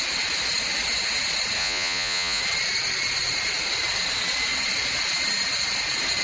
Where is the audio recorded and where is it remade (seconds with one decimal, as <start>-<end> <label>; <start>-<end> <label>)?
0.0-1.6 recorded; 1.6-2.4 remade; 2.4-6.2 recorded